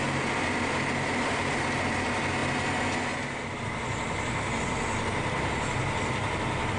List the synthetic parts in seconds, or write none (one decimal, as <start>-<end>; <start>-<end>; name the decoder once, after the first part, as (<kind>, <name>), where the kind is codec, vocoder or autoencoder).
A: none